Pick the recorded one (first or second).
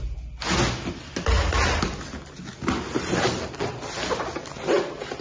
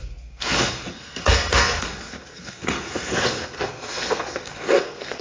first